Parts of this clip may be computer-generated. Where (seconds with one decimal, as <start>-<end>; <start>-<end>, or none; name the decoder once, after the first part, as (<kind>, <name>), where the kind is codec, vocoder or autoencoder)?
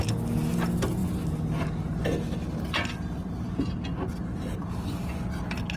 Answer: none